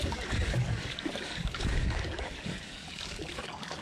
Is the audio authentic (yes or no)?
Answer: no